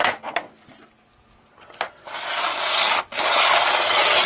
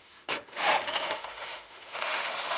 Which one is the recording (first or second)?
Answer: first